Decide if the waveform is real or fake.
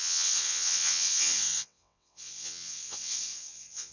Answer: fake